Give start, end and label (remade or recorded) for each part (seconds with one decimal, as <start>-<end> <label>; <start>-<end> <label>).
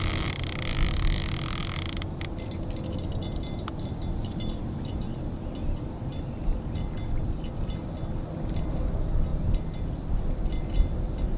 0.0-11.4 recorded